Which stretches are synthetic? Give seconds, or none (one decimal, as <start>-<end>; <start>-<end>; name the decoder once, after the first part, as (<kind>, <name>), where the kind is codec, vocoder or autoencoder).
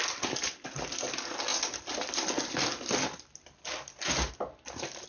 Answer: none